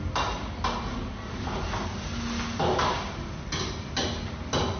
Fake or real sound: real